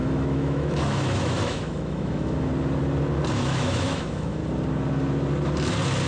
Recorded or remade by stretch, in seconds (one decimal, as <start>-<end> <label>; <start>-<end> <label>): 0.0-2.5 remade; 2.5-3.3 recorded; 3.3-4.4 remade; 4.4-6.1 recorded